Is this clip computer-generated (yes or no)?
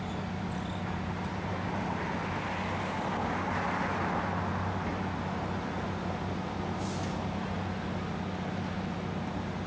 no